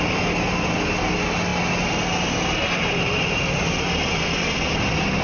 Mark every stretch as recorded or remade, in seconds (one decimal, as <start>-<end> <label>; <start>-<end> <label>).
0.0-5.2 recorded